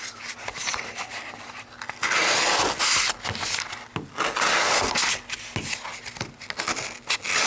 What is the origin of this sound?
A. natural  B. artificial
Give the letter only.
A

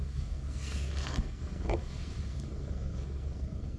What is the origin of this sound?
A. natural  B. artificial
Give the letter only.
B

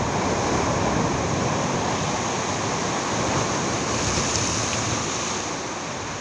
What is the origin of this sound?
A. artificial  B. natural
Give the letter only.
B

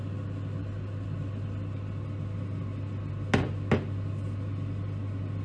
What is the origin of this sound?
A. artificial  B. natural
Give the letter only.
B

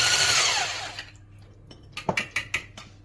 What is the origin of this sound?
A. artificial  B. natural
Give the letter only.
B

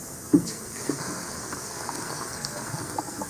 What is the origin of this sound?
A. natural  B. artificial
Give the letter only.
B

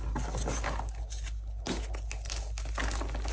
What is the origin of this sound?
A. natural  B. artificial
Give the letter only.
A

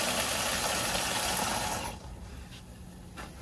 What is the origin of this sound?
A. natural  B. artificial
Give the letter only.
A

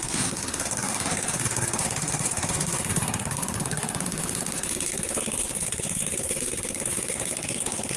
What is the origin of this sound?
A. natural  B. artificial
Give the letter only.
B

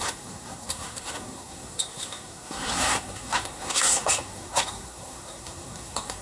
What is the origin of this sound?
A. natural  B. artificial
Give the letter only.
B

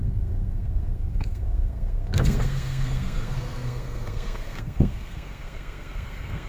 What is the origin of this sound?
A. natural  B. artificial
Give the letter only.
B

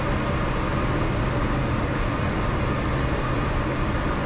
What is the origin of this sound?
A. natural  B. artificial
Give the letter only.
A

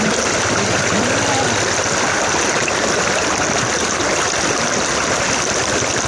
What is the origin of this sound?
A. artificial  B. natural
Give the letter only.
B